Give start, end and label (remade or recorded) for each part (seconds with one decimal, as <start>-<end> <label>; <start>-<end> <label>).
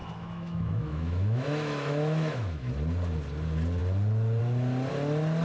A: 0.0-2.7 remade; 2.7-5.4 recorded